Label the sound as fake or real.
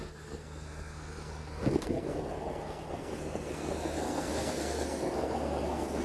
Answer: fake